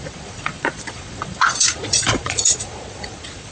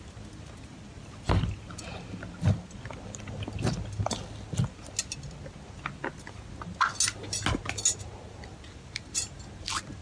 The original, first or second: second